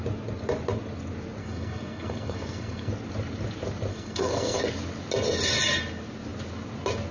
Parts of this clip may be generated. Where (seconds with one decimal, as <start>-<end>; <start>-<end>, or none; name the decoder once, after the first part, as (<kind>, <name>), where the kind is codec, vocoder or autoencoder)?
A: 1.4-2.9 (codec, SNAC); 3.9-4.6